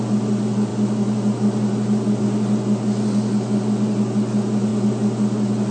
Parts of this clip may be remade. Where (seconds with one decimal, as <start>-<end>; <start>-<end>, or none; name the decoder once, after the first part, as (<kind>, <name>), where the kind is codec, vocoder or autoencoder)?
none